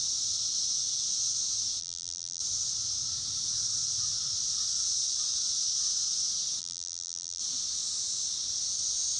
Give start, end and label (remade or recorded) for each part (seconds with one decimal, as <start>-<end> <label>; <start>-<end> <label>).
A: 0.0-1.8 recorded; 1.8-2.4 remade; 2.4-6.6 recorded; 6.6-7.4 remade; 7.4-9.2 recorded